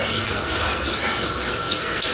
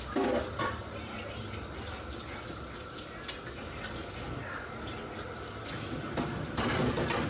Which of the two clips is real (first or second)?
second